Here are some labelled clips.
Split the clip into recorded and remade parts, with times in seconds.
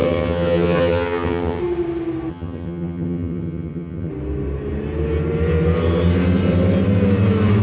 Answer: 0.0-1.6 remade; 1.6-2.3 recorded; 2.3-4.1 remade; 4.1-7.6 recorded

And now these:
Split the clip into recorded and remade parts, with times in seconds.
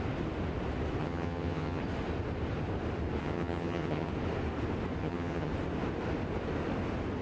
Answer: 0.0-1.0 recorded; 1.0-1.8 remade; 1.8-3.2 recorded; 3.2-4.1 remade; 4.1-5.0 recorded; 5.0-5.5 remade; 5.5-7.2 recorded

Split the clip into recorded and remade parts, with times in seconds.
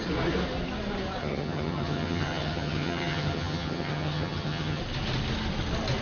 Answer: 0.0-1.2 recorded; 1.2-4.8 remade; 4.8-6.0 recorded